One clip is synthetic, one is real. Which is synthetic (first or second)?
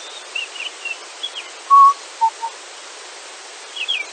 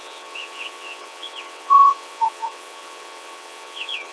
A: second